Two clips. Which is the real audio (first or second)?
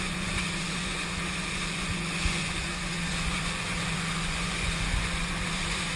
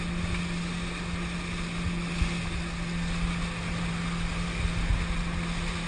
second